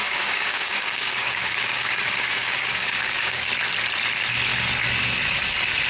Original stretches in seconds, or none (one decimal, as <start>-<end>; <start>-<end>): 3.5-5.9